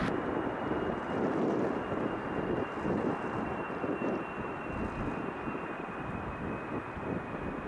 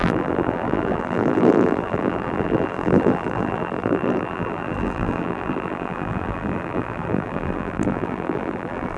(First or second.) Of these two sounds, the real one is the first